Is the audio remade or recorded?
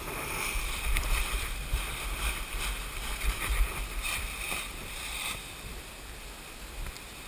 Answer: remade